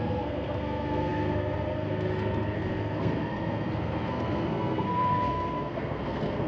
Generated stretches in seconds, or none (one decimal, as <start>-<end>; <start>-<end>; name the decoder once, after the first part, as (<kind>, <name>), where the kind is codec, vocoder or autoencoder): 0.0-6.5 (codec, SNAC)